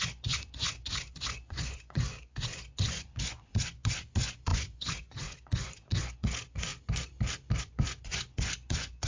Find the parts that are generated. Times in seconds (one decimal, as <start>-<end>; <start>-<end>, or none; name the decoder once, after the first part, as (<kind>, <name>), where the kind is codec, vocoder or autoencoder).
0.0-6.7 (vocoder, Vocos); 7.6-9.1